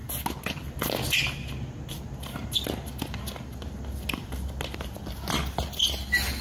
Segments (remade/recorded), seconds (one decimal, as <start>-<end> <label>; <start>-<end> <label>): 0.0-6.4 recorded